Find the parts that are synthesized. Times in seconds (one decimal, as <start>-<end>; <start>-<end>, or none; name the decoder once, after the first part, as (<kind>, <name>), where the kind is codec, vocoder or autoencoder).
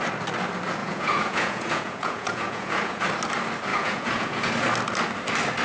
0.8-3.0 (vocoder, Vocos); 3.7-4.5